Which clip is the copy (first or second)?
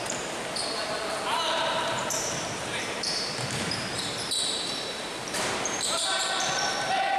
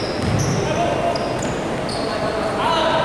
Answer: first